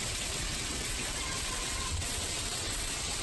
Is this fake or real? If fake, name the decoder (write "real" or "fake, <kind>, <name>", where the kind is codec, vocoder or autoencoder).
fake, vocoder, WaveNeXt